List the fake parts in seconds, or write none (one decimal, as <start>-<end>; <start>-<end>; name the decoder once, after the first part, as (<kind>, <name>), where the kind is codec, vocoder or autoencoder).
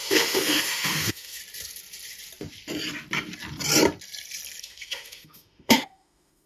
0.0-1.4 (autoencoder, DAC-VAE); 4.6-6.5